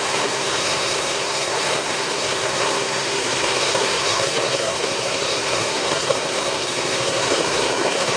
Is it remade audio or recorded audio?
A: remade